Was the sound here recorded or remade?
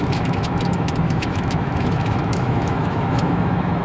remade